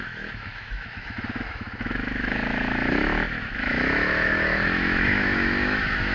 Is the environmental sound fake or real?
fake